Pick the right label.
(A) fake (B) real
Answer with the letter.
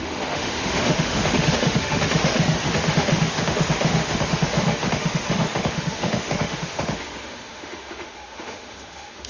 A